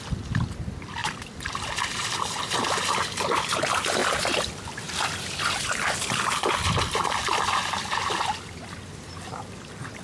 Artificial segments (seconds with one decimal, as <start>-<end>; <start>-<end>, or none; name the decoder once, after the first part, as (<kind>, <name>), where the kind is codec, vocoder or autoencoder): 1.0-2.6 (vocoder, BigVGAN v2); 4.0-9.2